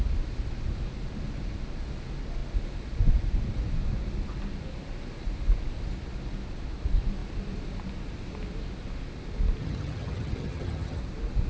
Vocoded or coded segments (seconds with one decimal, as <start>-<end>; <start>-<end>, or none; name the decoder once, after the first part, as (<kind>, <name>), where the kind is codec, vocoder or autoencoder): 9.6-11.0 (vocoder, HiFi-GAN)